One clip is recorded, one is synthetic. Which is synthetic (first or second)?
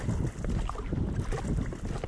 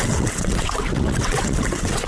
second